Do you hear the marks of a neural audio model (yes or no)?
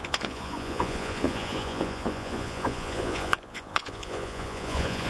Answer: yes